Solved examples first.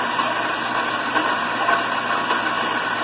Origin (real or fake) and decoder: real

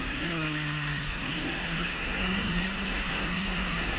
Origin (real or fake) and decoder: fake, codec, SNAC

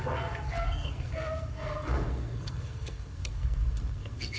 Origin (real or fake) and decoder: fake, codec, SNAC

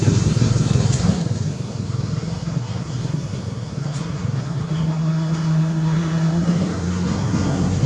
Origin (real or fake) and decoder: fake, codec, SNAC